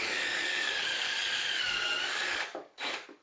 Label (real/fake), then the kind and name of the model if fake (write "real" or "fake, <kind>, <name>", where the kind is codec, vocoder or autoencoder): fake, codec, DAC